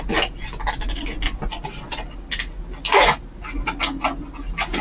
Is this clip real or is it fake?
real